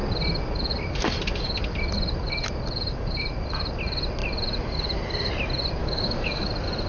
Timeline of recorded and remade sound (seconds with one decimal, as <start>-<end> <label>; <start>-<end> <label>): 0.0-5.8 recorded; 5.8-6.5 remade; 6.5-6.9 recorded

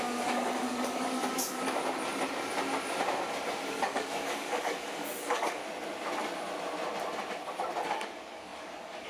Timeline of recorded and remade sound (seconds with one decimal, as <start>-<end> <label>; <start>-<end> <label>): 0.0-1.8 remade; 1.8-3.7 recorded; 3.7-5.6 remade; 5.6-7.8 recorded; 7.8-9.1 remade

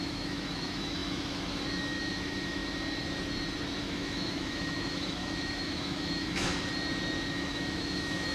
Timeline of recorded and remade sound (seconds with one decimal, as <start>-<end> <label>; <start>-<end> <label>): 0.0-2.6 remade; 2.6-3.8 recorded; 3.8-6.5 remade; 6.5-7.3 recorded; 7.3-8.3 remade

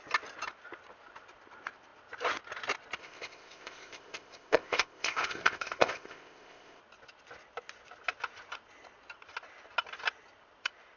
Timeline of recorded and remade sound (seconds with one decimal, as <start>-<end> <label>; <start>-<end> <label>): 0.0-3.0 recorded; 3.0-6.8 remade; 6.8-11.0 recorded

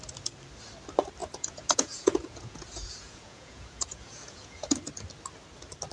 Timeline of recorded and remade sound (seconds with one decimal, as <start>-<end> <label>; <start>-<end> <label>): 0.0-1.2 recorded; 1.2-4.7 remade; 4.7-5.9 recorded